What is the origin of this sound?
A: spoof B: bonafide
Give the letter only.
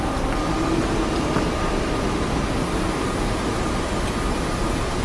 B